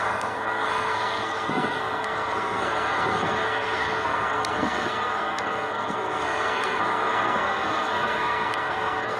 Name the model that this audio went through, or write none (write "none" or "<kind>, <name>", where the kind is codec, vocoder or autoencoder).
codec, SNAC